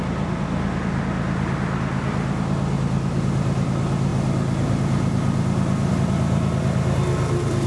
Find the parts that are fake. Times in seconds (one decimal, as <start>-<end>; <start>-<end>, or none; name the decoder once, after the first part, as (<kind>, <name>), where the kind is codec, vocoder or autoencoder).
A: none